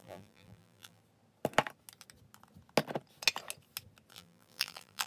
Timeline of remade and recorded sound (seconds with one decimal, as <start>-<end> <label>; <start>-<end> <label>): 0.0-1.0 remade; 1.0-4.1 recorded; 4.1-5.1 remade